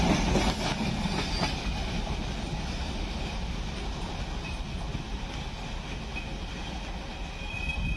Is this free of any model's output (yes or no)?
yes